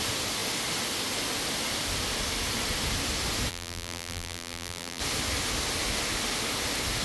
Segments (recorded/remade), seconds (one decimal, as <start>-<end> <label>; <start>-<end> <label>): 0.0-3.5 recorded; 3.5-5.0 remade; 5.0-7.0 recorded